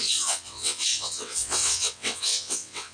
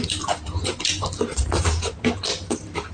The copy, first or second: first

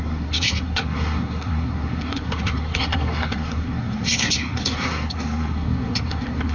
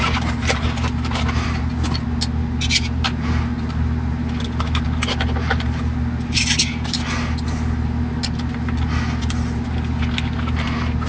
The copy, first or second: first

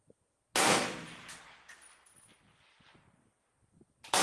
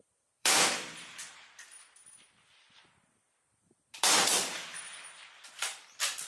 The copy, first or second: second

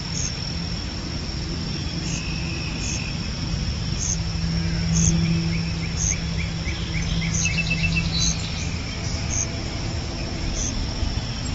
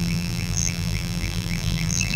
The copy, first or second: second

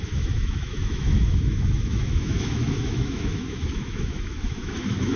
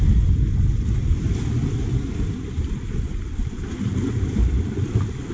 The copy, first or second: first